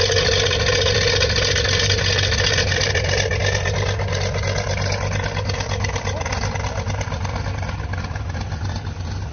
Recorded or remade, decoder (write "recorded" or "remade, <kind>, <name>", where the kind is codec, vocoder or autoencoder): recorded